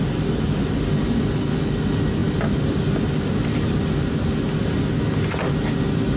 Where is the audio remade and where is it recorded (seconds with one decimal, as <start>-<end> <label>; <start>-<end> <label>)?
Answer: 0.0-6.2 recorded